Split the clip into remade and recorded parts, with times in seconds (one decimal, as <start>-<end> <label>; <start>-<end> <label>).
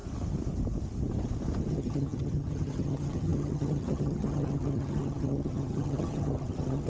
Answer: 0.0-1.7 recorded; 1.7-6.9 remade